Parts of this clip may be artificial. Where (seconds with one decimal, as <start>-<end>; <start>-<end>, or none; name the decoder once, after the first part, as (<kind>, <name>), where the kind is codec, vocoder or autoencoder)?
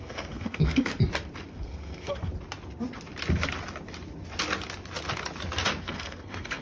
0.0-0.9 (codec, SNAC); 1.5-2.3; 5.8-6.6